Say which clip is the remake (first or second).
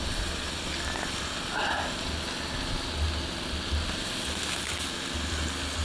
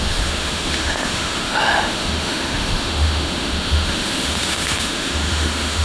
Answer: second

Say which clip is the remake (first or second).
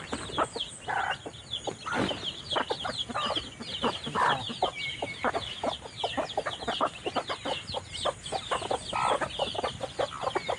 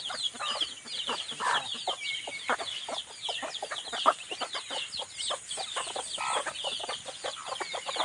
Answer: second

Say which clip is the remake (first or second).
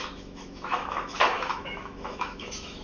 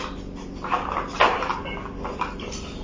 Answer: first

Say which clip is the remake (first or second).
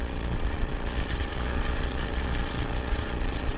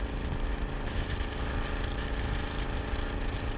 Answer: first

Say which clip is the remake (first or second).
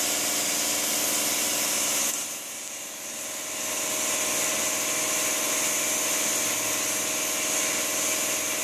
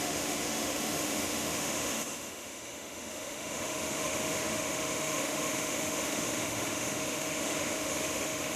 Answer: second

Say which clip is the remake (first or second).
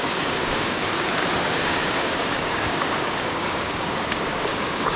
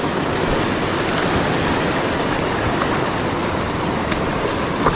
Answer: first